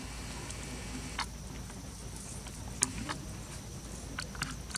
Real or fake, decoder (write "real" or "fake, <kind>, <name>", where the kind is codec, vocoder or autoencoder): real